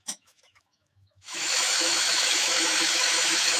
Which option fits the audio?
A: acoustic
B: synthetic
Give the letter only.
B